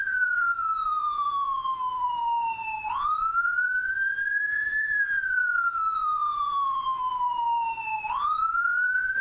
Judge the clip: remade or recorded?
remade